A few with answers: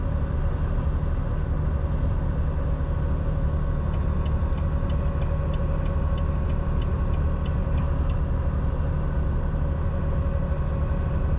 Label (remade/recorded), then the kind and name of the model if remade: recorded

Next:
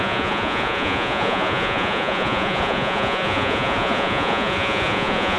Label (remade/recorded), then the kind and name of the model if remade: remade, vocoder, Vocos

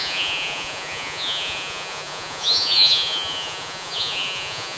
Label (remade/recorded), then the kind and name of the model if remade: remade, vocoder, Vocos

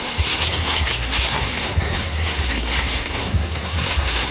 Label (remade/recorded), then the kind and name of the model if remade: remade, codec, SNAC